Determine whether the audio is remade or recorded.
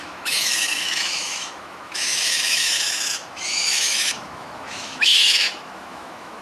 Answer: remade